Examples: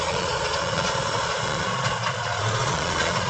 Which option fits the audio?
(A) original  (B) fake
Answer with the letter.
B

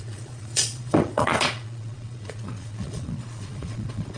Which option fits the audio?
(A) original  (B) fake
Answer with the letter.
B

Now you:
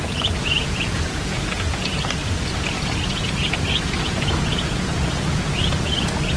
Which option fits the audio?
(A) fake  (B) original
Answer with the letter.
A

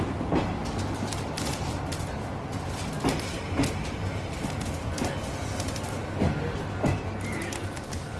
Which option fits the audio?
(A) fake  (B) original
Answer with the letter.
B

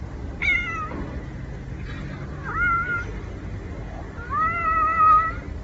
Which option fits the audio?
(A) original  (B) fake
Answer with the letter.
A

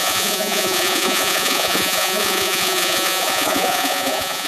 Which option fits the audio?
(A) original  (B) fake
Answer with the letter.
B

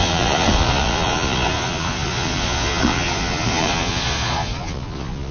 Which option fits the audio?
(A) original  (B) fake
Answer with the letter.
B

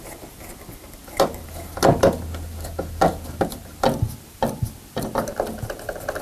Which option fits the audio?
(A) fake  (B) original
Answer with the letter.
B